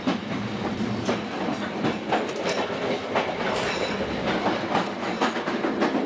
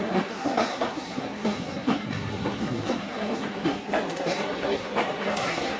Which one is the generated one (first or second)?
second